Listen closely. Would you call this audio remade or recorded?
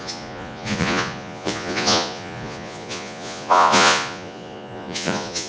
remade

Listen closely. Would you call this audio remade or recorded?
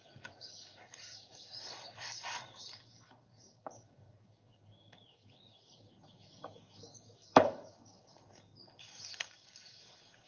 remade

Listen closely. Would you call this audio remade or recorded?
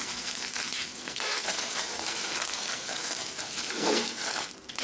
remade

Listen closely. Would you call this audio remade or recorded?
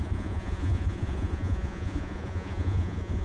remade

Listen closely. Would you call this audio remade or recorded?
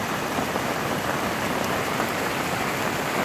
recorded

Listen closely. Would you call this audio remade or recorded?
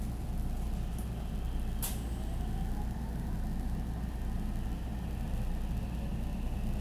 recorded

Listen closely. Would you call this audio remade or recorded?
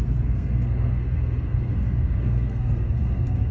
remade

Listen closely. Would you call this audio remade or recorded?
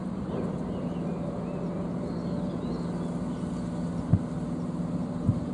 recorded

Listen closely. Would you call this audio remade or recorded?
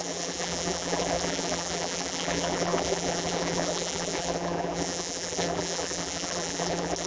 remade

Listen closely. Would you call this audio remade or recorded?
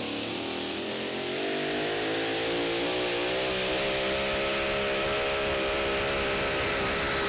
recorded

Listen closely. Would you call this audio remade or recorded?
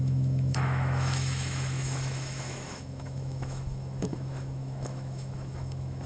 remade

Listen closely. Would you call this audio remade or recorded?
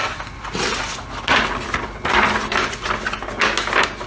recorded